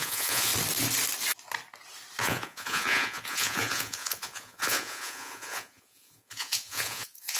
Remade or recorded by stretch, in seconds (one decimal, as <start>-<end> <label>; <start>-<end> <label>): 0.0-0.5 remade; 0.5-2.2 recorded; 2.2-7.4 remade